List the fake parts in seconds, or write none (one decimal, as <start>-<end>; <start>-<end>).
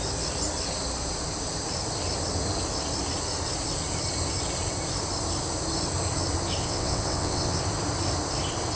6.6-7.6